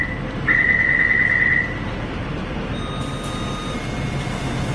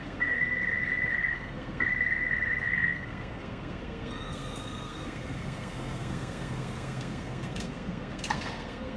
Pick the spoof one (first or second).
second